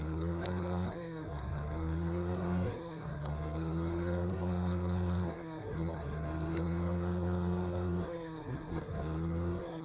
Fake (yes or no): yes